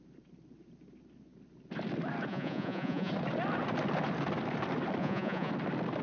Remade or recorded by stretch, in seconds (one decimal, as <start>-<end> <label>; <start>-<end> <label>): 0.0-2.3 recorded; 2.3-3.1 remade; 3.1-5.0 recorded; 5.0-5.5 remade; 5.5-6.0 recorded